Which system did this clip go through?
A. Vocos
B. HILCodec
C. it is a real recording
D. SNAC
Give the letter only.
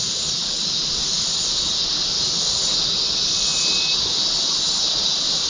C